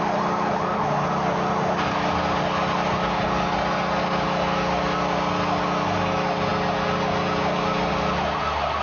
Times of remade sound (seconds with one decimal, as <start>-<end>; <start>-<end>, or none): none